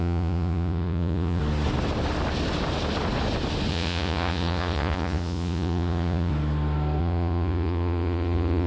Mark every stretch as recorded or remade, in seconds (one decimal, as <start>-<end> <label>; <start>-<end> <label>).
0.0-1.4 remade; 1.4-3.7 recorded; 3.7-6.3 remade; 6.3-7.0 recorded; 7.0-8.7 remade